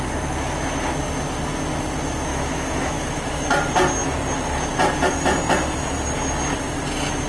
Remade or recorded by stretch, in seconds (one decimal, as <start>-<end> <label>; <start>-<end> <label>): 0.0-2.3 recorded; 2.3-3.4 remade; 3.4-7.3 recorded